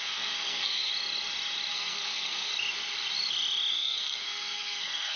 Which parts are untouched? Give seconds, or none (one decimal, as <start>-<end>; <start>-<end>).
0.9-1.7; 2.5-3.7